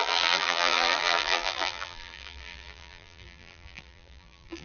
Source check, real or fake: fake